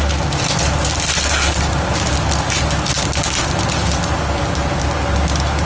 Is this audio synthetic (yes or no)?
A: no